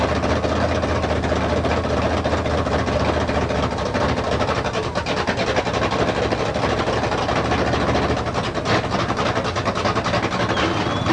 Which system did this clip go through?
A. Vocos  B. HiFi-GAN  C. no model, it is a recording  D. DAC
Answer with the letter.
C